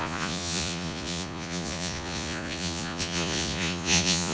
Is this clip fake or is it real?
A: fake